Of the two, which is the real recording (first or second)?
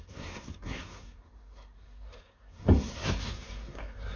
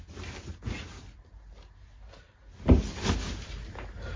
second